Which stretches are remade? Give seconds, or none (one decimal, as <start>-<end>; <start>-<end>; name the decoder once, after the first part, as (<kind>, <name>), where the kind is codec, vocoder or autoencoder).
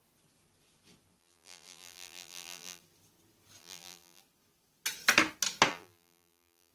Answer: 1.2-2.8 (vocoder, BigVGAN v2); 3.6-4.2; 5.7-6.7